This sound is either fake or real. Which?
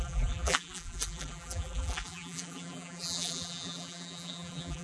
fake